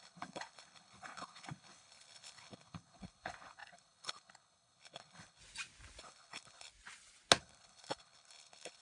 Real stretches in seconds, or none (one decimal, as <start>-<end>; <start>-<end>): 5.4-6.0; 6.7-7.4